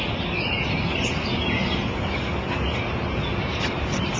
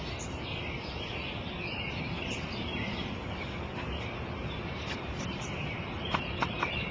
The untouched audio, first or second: first